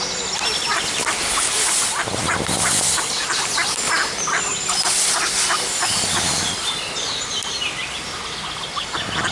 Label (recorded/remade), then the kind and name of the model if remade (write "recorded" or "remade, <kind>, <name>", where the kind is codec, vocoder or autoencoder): recorded